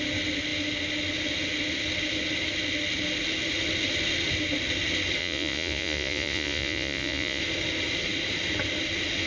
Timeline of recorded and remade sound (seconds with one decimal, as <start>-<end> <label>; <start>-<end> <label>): 0.0-5.2 recorded; 5.2-7.4 remade; 7.4-9.3 recorded